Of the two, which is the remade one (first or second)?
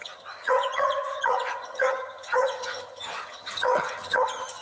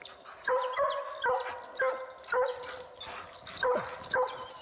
first